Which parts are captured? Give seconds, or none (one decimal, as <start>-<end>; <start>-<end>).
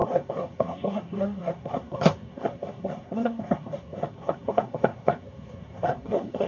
none